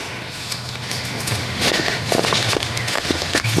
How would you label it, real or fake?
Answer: fake